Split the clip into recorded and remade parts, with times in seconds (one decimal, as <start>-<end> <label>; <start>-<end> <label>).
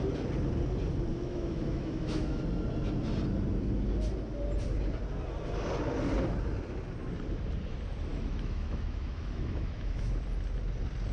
0.0-1.1 recorded; 1.1-2.4 remade; 2.4-8.1 recorded; 8.1-10.1 remade; 10.1-11.1 recorded